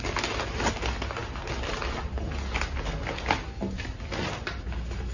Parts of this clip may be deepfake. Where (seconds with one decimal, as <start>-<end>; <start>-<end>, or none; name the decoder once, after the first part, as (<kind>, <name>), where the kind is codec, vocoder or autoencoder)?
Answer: none